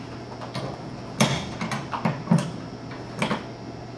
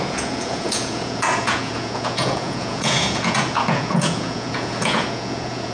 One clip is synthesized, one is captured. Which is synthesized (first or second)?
second